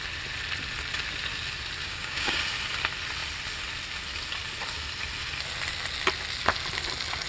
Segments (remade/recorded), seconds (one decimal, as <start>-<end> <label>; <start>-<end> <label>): 0.0-1.8 recorded; 1.8-2.4 remade; 2.4-7.3 recorded